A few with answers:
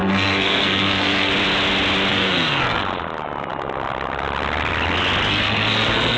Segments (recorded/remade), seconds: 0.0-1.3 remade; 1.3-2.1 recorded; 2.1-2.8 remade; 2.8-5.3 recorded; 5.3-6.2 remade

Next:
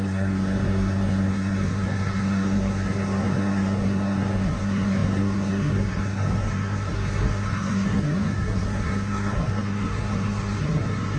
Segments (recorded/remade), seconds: 0.0-11.2 remade

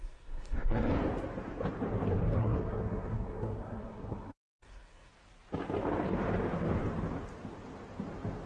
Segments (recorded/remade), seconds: 0.0-0.9 remade; 0.9-2.4 recorded; 2.4-5.1 remade; 5.1-8.5 recorded

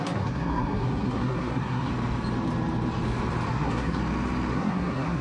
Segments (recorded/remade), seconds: 0.0-1.9 remade; 1.9-3.5 recorded; 3.5-4.0 remade; 4.0-4.5 recorded; 4.5-5.2 remade

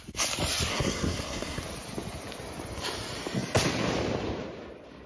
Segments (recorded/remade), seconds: 0.0-0.7 recorded; 0.7-1.6 remade; 1.6-5.1 recorded

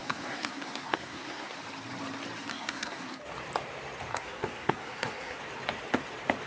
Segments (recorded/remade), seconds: 0.0-1.5 remade; 1.5-2.5 recorded; 2.5-3.2 remade; 3.2-4.1 recorded; 4.1-5.4 remade; 5.4-6.5 recorded

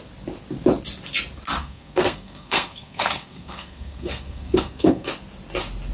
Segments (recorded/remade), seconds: 0.0-1.6 recorded; 1.6-5.1 remade; 5.1-5.9 recorded

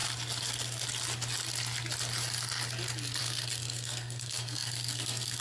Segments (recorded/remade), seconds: 0.0-3.2 recorded; 3.2-5.4 remade